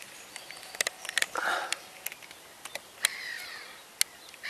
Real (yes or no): yes